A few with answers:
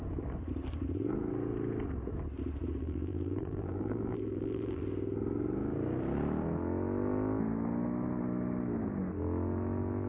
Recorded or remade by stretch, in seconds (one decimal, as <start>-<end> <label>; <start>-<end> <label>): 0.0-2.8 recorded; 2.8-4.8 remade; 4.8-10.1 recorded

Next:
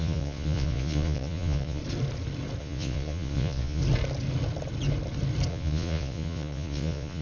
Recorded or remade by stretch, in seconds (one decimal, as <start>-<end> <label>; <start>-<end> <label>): 0.0-1.8 remade; 1.8-2.6 recorded; 2.6-3.8 remade; 3.8-5.5 recorded; 5.5-7.2 remade

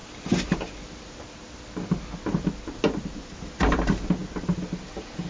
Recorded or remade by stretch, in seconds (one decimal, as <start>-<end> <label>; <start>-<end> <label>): 0.0-5.3 recorded

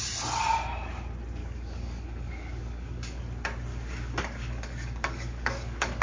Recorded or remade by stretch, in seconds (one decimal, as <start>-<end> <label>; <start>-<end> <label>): 0.0-1.4 recorded; 1.4-3.2 remade; 3.2-3.7 recorded; 3.7-6.0 remade

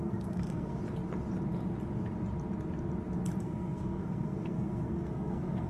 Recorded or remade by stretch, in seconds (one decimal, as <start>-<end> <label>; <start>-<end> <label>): 0.0-0.8 remade; 0.8-3.4 recorded; 3.4-5.7 remade

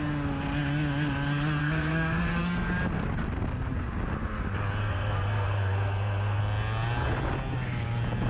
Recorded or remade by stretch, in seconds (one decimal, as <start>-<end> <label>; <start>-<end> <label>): 0.0-1.6 recorded; 1.6-2.7 remade; 2.7-4.8 recorded; 4.8-6.4 remade; 6.4-8.3 recorded